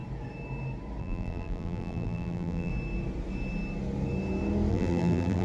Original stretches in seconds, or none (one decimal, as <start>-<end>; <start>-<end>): 0.0-1.0; 2.7-4.7